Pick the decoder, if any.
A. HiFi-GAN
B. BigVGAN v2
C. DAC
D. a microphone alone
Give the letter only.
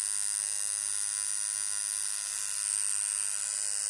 D